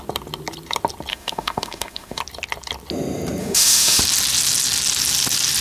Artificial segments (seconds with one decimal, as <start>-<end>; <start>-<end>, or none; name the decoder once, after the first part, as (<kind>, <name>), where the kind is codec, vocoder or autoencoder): 1.1-2.2 (autoencoder, DAC-VAE); 3.4-4.0